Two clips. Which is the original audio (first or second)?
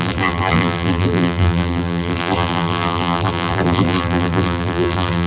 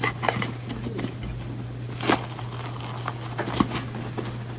second